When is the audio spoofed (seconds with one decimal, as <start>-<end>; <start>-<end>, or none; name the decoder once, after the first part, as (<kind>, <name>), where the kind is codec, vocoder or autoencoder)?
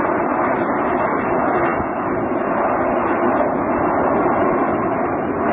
none